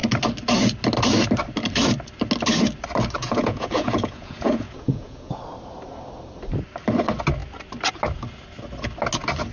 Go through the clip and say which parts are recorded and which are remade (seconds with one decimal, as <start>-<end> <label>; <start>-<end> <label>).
0.0-3.2 recorded; 3.2-5.4 remade; 5.4-9.5 recorded